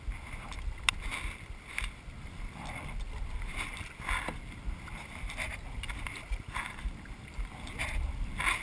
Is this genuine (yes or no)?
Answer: yes